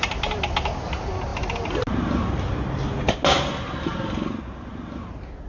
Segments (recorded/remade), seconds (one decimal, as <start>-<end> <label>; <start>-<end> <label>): 0.0-5.5 recorded